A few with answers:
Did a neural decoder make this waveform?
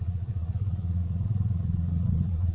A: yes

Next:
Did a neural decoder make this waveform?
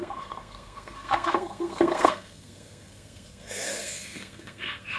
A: yes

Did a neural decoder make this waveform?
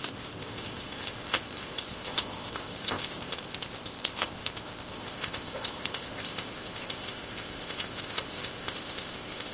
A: yes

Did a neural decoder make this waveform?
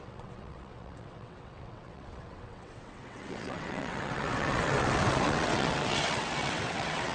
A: yes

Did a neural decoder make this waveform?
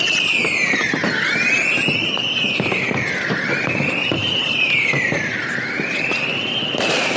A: no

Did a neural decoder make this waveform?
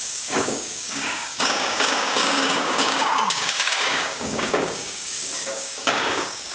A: yes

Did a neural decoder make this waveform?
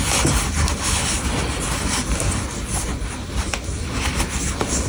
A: no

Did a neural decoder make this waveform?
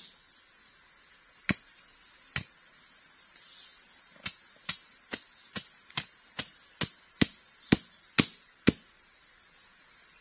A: no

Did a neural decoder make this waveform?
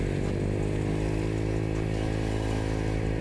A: no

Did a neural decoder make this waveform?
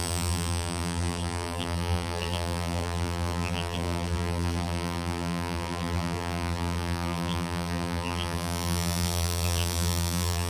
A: yes